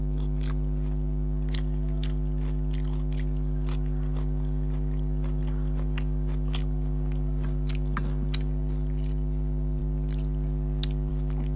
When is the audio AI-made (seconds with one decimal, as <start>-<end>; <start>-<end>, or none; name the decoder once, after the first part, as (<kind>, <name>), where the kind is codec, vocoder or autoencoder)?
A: none